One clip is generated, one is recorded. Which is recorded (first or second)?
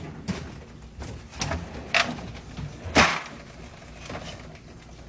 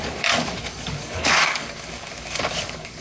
first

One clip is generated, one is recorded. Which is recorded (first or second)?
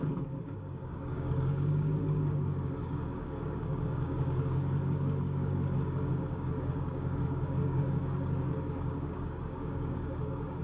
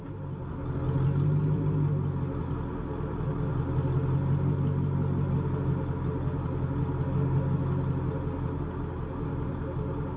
second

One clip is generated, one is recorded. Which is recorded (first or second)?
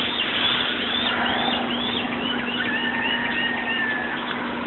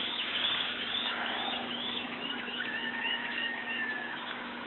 first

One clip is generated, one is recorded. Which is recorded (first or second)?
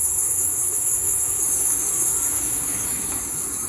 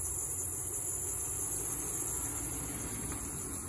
second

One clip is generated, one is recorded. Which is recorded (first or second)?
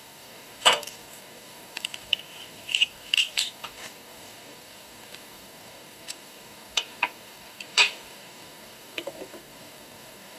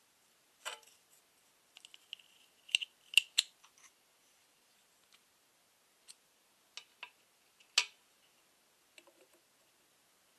second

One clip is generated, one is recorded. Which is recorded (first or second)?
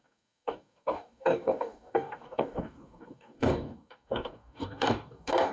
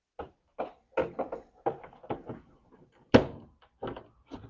second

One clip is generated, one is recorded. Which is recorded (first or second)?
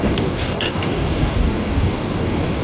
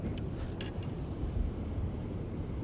second